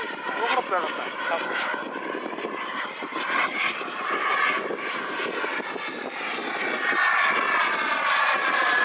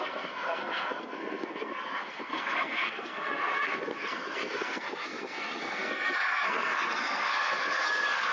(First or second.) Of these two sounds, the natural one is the first